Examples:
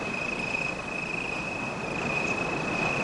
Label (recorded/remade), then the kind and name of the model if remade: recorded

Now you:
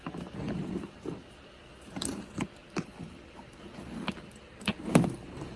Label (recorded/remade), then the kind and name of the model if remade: recorded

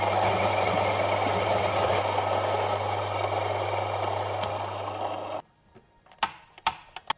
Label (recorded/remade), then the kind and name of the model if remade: recorded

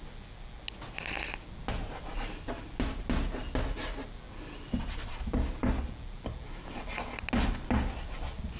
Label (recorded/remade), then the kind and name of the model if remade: recorded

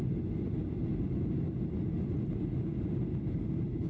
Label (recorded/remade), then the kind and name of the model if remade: remade, vocoder, BigVGAN v2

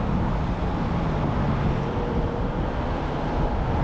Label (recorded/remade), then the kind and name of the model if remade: recorded